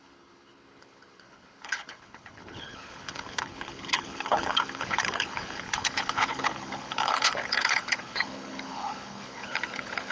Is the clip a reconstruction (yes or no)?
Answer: yes